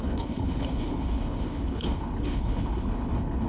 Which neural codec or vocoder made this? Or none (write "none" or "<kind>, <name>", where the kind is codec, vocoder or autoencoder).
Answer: codec, HILCodec